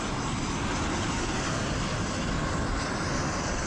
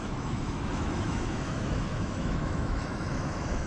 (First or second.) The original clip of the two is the first